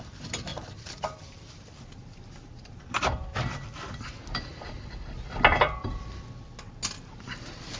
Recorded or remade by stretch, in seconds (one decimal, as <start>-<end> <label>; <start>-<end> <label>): 0.0-0.5 recorded; 0.5-2.8 remade; 2.8-4.5 recorded; 4.5-5.1 remade; 5.1-7.8 recorded